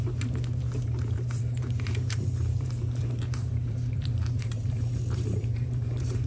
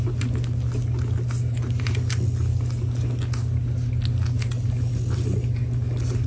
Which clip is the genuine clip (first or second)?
second